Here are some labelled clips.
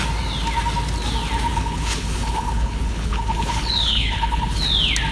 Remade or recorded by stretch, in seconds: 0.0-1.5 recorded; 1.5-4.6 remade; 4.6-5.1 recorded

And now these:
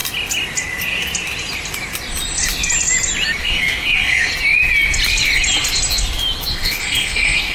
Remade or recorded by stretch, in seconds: 0.0-3.4 recorded; 3.4-4.3 remade; 4.3-6.5 recorded; 6.5-7.5 remade

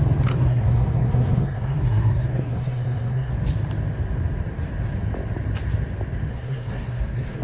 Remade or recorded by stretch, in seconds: 0.0-0.4 recorded; 0.4-3.3 remade; 3.3-6.3 recorded; 6.3-7.4 remade

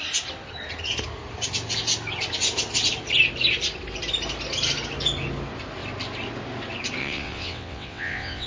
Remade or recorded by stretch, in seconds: 0.0-7.0 recorded; 7.0-8.5 remade

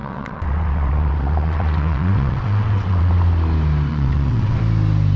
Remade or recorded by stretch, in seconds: 0.0-3.1 remade; 3.1-3.9 recorded; 3.9-4.6 remade; 4.6-5.2 recorded

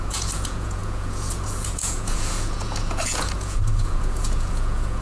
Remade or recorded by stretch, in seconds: 0.0-5.0 remade